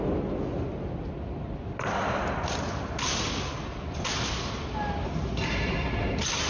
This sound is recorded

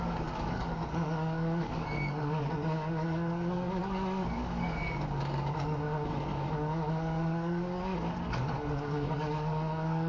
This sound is remade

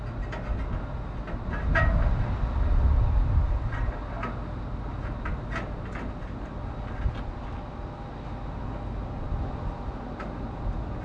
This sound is recorded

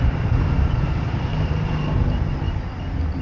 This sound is recorded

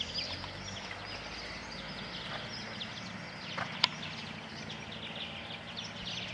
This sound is recorded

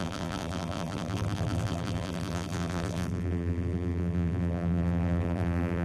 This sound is remade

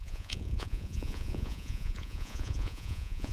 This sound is remade